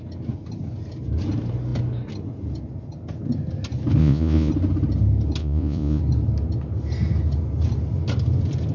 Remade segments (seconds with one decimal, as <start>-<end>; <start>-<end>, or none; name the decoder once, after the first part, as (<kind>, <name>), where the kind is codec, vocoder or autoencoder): 4.0-4.5 (vocoder, Vocos); 5.4-6.0